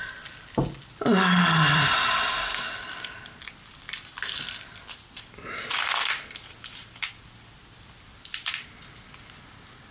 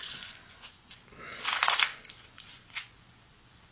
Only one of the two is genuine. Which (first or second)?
first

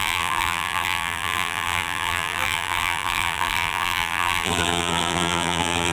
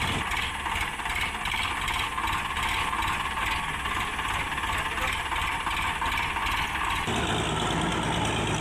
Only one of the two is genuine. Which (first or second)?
second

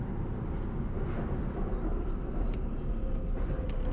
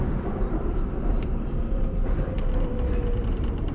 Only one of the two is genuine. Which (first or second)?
first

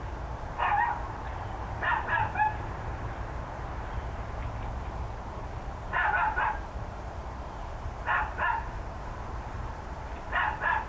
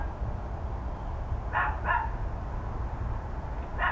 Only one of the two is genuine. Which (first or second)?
second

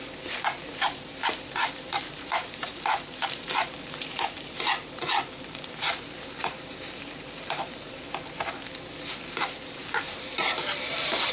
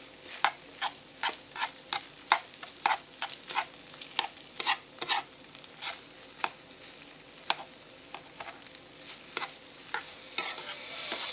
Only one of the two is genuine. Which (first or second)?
second